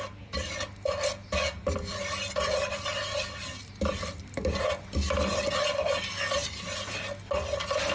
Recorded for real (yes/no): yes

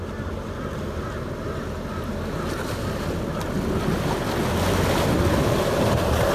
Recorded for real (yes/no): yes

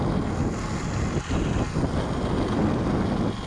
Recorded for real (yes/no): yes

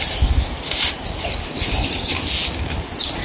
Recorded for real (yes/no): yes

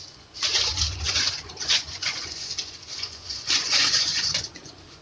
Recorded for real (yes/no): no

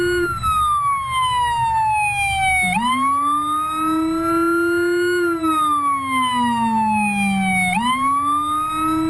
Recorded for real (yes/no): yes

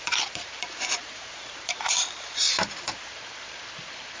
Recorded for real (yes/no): no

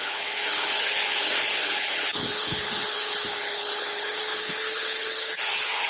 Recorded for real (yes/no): no